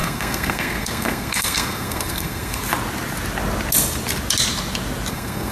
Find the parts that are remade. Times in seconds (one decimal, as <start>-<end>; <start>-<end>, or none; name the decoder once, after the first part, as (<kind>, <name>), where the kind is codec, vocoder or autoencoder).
0.0-2.6 (codec, SNAC); 5.1-5.5